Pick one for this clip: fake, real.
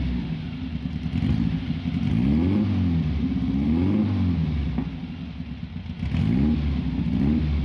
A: real